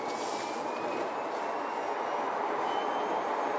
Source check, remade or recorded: recorded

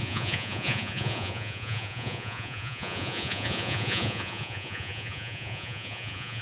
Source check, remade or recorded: remade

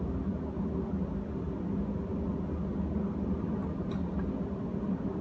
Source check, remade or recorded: recorded